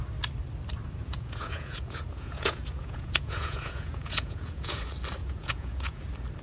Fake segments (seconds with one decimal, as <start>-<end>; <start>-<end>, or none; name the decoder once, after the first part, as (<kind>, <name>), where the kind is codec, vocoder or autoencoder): 1.0-4.8 (vocoder, Vocos); 5.2-6.0